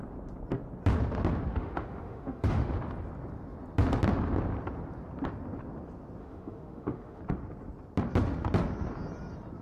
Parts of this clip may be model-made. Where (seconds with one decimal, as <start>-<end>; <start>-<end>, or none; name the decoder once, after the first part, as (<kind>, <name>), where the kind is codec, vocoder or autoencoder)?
1.5-2.7 (autoencoder, DAC-VAE); 6.2-7.2